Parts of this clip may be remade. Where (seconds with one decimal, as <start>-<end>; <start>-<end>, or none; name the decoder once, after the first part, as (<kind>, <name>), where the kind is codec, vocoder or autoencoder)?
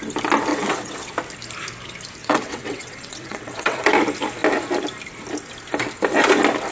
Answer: 0.5-1.1 (vocoder, WaveNeXt); 2.2-3.9